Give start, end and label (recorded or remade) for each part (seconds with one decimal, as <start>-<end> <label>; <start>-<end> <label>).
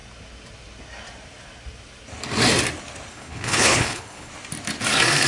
0.0-3.1 recorded; 3.1-4.3 remade; 4.3-5.3 recorded